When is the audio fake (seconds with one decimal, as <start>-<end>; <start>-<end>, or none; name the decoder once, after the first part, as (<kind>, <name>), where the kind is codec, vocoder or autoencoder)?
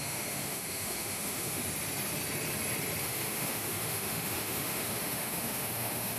0.0-1.6 (autoencoder, DAC-VAE); 3.0-6.2